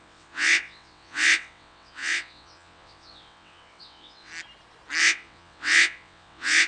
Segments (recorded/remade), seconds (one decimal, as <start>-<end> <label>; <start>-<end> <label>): 0.0-4.3 remade; 4.3-5.0 recorded; 5.0-6.7 remade